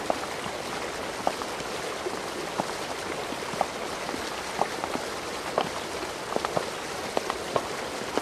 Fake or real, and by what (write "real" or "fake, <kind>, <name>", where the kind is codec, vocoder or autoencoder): real